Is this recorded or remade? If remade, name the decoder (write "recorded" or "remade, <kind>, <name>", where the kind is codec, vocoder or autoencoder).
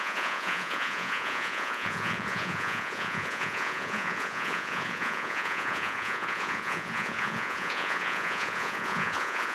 remade, vocoder, Vocos